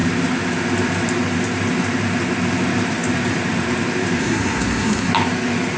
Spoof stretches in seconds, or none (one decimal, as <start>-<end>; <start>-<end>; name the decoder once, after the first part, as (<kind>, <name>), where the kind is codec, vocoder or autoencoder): 4.2-5.1 (codec, SNAC)